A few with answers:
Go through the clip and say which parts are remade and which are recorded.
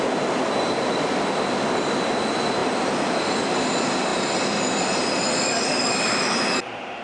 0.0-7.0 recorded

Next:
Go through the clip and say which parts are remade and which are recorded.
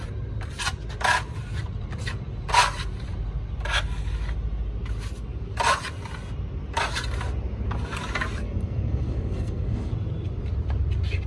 0.0-8.4 recorded; 8.4-9.9 remade; 9.9-11.3 recorded